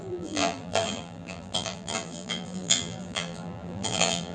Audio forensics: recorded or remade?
remade